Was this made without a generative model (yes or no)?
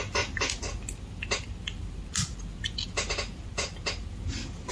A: yes